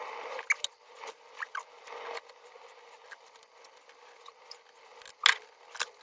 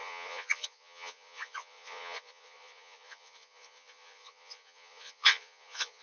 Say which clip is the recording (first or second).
first